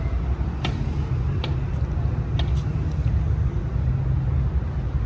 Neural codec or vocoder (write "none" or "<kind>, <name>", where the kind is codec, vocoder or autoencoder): none